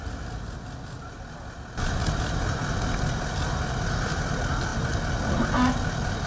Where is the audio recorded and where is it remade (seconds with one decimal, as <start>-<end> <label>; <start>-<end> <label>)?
0.0-6.3 recorded